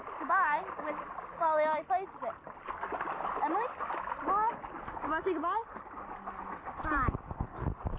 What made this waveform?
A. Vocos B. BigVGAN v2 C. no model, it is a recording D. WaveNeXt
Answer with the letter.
C